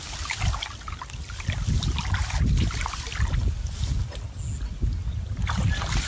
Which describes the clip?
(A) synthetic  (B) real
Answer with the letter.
B